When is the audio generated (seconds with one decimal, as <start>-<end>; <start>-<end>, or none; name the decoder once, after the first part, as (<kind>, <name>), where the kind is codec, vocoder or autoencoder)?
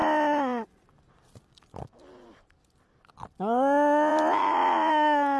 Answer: 0.0-2.4 (vocoder, BigVGAN v2); 4.1-4.9